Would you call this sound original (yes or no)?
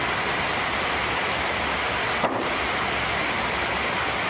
yes